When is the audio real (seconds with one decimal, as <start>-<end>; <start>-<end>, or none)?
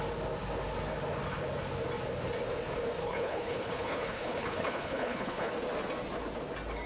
0.0-3.0; 5.5-6.9